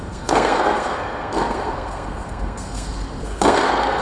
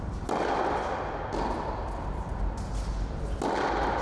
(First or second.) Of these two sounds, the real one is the second